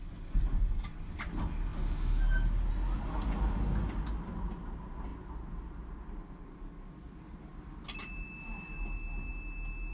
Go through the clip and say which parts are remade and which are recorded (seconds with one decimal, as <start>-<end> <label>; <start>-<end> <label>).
0.0-9.9 recorded

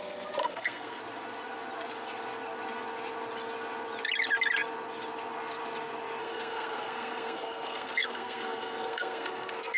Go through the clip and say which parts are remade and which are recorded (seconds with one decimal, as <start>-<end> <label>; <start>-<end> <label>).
0.0-0.4 recorded; 0.4-1.0 remade; 1.0-6.2 recorded; 6.2-9.8 remade

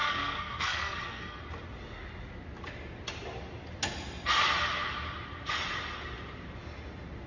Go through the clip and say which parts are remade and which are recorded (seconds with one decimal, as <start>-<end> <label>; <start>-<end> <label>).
0.0-1.4 remade; 1.4-7.3 recorded

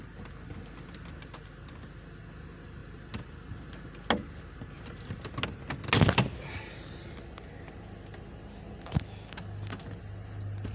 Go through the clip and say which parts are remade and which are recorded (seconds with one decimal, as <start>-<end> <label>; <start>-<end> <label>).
0.0-10.7 recorded